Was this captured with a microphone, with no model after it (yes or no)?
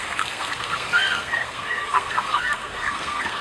no